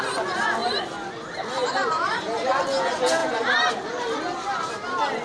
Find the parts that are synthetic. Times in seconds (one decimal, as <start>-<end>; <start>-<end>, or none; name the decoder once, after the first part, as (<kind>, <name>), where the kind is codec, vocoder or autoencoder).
0.6-1.2 (vocoder, BigVGAN v2); 1.8-2.5; 3.2-3.7